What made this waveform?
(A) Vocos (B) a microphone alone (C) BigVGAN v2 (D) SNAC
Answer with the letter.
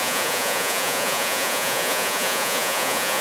A